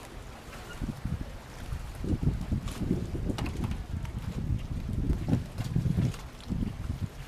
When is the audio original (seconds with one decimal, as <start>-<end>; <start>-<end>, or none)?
0.0-7.3